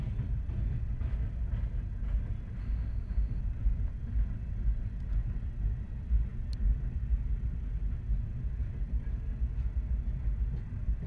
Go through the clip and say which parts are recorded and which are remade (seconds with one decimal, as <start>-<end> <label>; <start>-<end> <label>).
0.0-2.6 recorded; 2.6-3.4 remade; 3.4-11.1 recorded